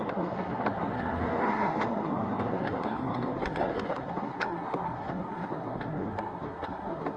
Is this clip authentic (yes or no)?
no